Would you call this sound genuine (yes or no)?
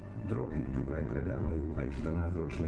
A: no